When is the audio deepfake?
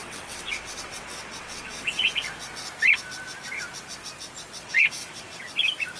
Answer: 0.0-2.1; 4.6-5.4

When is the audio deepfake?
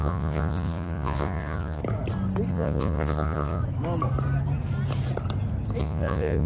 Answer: 0.0-1.8; 2.5-3.6; 5.8-6.5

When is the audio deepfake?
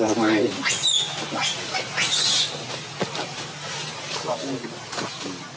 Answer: none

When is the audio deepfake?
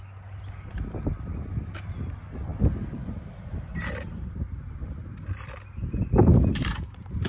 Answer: 4.1-5.0; 6.3-7.3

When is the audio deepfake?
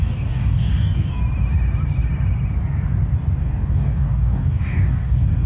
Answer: 0.0-1.2; 3.4-5.5